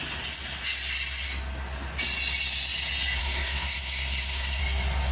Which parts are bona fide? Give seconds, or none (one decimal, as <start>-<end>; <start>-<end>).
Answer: 0.0-3.2; 4.6-5.1